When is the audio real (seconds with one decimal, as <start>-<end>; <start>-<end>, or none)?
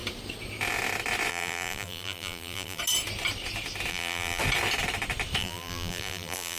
0.0-1.3; 2.8-3.9; 4.4-5.4